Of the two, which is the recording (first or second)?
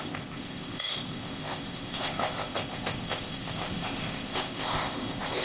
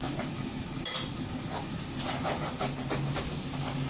second